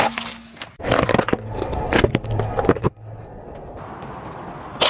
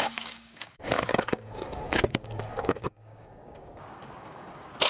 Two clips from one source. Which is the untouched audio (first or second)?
first